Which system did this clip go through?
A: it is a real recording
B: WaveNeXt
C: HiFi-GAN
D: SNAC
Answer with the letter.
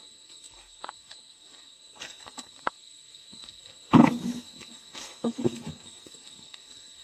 D